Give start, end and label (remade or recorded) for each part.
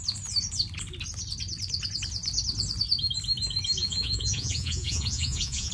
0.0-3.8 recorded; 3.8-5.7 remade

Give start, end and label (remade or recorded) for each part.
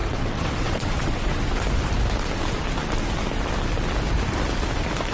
0.0-1.4 remade; 1.4-5.1 recorded